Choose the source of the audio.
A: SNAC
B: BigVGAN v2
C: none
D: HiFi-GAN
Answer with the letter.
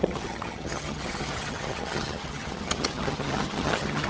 D